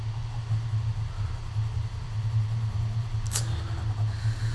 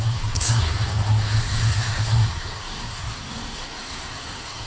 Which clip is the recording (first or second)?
first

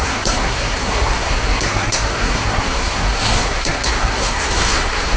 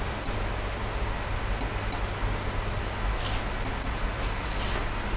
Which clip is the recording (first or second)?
second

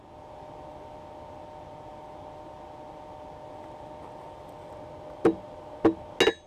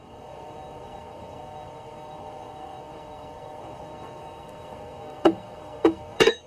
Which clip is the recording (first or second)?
first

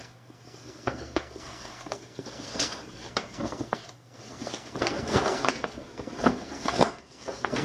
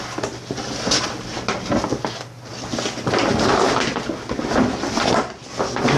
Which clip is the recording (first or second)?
second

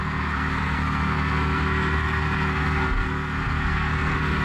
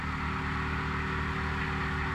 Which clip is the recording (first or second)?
second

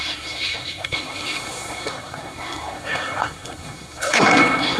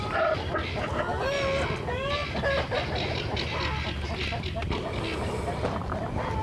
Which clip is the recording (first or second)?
second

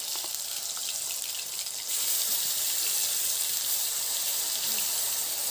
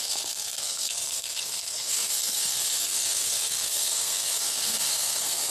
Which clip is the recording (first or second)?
first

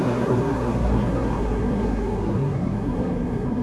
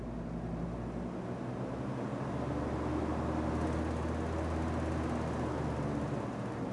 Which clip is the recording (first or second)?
second